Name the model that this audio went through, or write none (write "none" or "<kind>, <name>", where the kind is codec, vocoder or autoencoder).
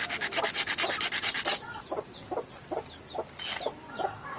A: none